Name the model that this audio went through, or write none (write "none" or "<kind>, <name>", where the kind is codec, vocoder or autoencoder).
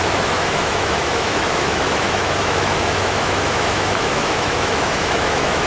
autoencoder, DAC-VAE